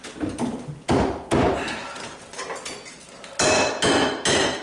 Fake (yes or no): no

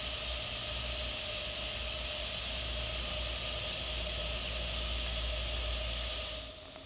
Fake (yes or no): no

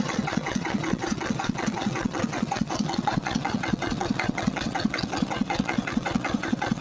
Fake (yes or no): yes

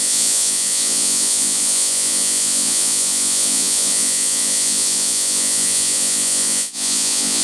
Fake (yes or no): yes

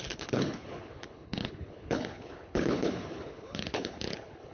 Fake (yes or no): yes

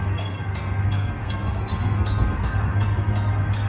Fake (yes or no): yes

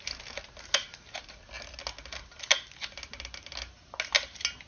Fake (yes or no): no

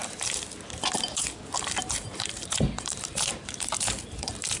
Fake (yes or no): yes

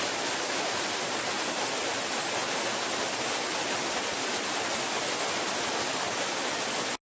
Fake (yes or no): no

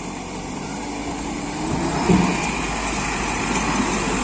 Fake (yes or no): no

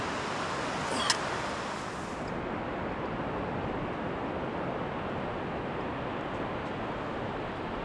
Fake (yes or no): no